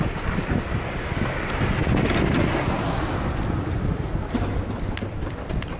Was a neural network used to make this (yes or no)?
no